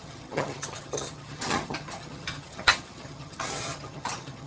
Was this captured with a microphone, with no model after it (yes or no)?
no